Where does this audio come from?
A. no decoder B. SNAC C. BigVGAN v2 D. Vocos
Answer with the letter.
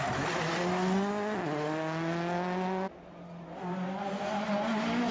A